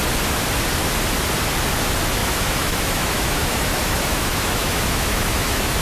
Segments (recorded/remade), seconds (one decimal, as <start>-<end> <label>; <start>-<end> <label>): 0.0-2.2 recorded; 2.2-5.8 remade